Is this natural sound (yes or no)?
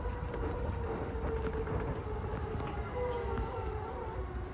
yes